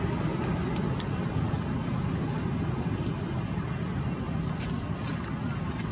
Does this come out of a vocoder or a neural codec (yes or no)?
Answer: no